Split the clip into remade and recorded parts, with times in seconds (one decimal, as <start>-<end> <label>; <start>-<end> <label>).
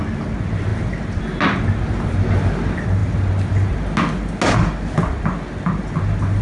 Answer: 0.0-6.4 recorded